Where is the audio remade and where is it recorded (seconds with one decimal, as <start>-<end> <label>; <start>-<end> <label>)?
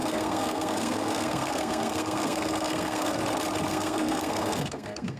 0.0-3.1 remade; 3.1-3.7 recorded; 3.7-5.2 remade